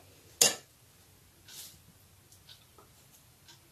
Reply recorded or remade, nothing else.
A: recorded